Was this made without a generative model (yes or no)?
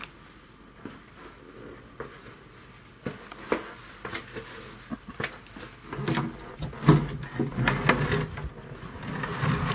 yes